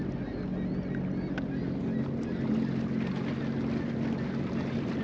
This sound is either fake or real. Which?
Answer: real